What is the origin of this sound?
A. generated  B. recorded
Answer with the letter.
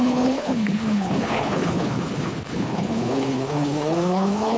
A